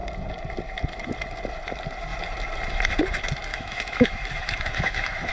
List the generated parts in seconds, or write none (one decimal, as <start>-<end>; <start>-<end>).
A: 3.5-5.3